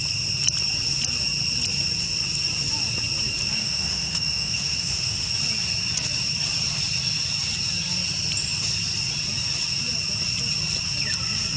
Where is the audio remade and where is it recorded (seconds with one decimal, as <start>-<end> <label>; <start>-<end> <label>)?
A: 0.0-3.6 recorded; 3.6-5.3 remade; 5.3-11.6 recorded